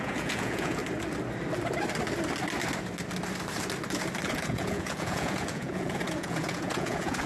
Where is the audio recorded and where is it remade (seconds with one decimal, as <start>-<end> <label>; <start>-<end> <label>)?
0.0-0.8 remade; 0.8-4.3 recorded; 4.3-7.3 remade

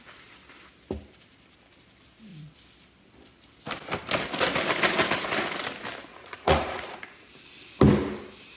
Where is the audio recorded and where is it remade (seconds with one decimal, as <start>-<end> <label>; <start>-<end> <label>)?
0.0-6.1 recorded; 6.1-7.3 remade; 7.3-8.6 recorded

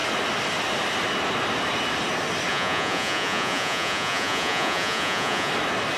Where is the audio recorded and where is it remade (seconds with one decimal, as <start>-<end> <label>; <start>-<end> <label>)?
0.0-2.5 recorded; 2.5-5.5 remade; 5.5-6.0 recorded

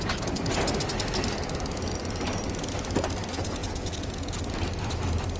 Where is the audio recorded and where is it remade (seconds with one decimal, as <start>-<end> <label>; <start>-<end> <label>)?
0.0-3.6 recorded; 3.6-4.4 remade; 4.4-5.4 recorded